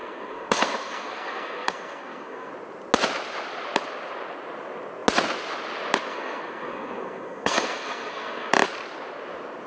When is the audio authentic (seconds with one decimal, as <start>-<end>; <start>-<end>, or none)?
2.5-6.1; 8.5-9.7